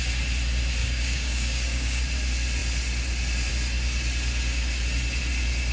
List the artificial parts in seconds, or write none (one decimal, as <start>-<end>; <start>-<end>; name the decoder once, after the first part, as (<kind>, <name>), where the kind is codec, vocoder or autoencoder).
0.8-2.0 (codec, DAC)